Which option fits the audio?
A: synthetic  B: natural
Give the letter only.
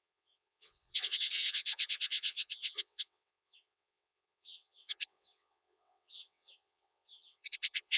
A